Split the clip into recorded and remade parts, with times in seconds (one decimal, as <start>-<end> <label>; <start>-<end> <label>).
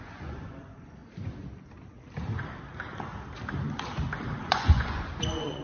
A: 0.0-1.0 remade; 1.0-4.4 recorded; 4.4-5.6 remade